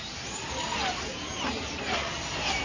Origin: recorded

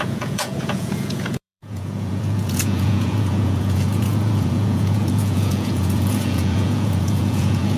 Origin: remade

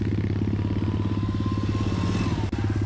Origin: recorded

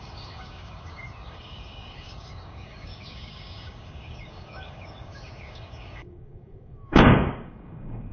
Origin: remade